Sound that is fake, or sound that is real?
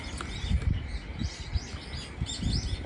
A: real